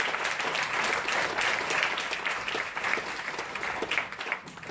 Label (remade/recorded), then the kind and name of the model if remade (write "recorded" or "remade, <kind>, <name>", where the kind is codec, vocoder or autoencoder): recorded